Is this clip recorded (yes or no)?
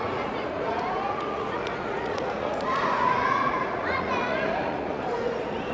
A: no